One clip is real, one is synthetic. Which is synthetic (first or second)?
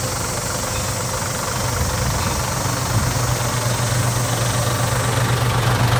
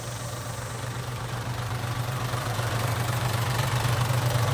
second